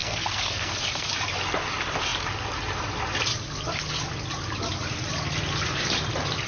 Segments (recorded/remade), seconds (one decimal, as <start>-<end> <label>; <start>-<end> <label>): 0.0-1.1 remade; 1.1-6.5 recorded